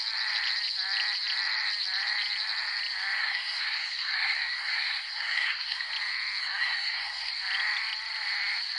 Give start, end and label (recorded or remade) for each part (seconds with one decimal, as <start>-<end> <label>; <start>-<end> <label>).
0.0-3.2 recorded; 3.2-5.9 remade; 5.9-6.4 recorded; 6.4-7.3 remade; 7.3-8.8 recorded